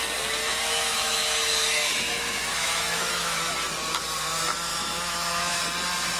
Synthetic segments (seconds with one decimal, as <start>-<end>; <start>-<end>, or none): 0.4-3.5; 4.7-5.6